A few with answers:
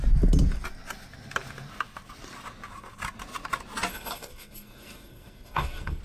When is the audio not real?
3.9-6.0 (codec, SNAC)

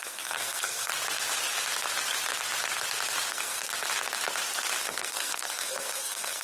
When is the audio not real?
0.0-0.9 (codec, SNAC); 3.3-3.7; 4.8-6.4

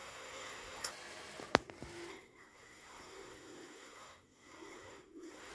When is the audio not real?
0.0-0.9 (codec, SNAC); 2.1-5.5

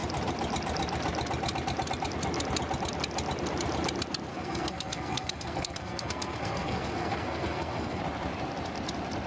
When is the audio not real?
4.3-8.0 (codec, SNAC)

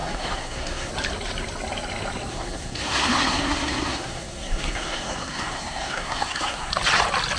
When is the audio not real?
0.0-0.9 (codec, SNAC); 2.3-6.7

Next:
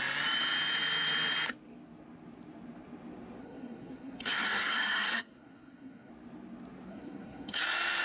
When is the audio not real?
3.4-6.1 (codec, SNAC); 6.9-7.6

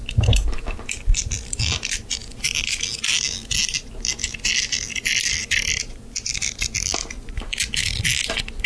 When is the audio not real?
none